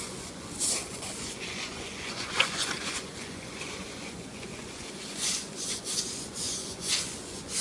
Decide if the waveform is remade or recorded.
remade